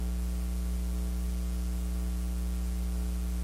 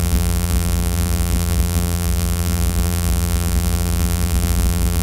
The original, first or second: first